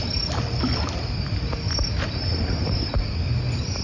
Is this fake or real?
real